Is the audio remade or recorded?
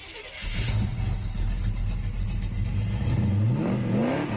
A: recorded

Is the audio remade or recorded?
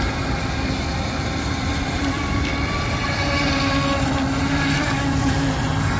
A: recorded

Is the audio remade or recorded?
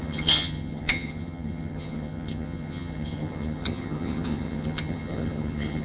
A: remade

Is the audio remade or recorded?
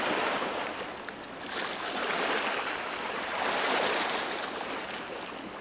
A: recorded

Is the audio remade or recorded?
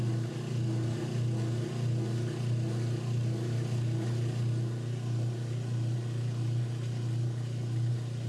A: recorded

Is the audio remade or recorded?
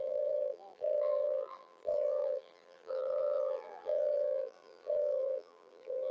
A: remade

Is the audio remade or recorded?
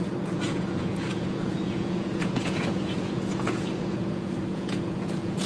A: remade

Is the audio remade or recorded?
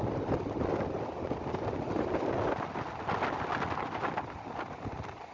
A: recorded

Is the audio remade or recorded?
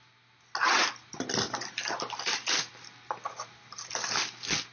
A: recorded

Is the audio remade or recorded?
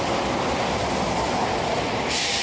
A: recorded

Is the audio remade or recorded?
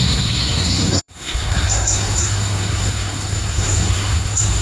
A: remade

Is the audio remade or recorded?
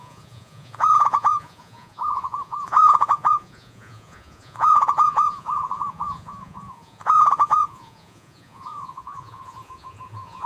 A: remade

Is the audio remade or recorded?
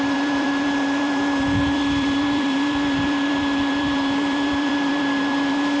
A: remade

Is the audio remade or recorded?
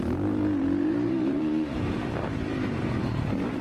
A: remade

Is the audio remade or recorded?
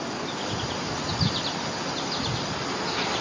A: recorded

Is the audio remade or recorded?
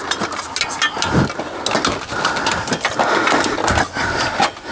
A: recorded